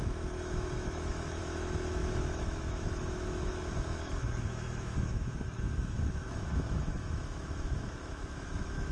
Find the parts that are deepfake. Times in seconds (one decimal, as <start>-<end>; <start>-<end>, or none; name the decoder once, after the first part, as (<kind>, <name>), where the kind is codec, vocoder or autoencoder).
0.0-8.9 (autoencoder, DAC-VAE)